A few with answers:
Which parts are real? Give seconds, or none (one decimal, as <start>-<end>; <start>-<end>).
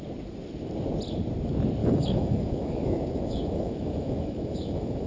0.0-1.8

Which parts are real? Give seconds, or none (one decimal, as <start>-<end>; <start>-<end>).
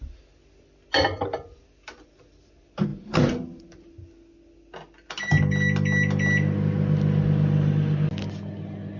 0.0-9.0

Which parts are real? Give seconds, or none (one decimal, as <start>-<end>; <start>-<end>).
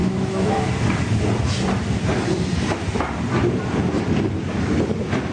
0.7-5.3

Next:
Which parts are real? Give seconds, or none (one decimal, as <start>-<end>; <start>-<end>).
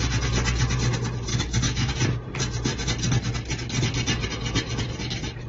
0.0-1.3; 1.9-5.5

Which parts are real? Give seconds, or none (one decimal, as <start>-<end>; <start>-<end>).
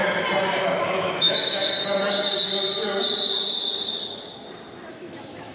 0.0-0.6; 1.6-4.9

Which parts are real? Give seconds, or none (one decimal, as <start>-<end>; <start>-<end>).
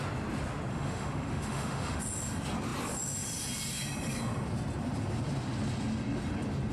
0.0-0.7; 2.0-6.7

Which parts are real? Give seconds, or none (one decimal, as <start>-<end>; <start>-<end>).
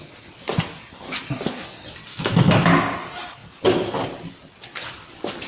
0.0-2.1; 2.7-5.5